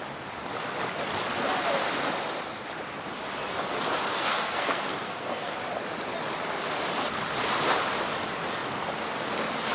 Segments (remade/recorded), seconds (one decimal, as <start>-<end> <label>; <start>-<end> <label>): 0.0-4.1 recorded; 4.1-5.6 remade; 5.6-9.7 recorded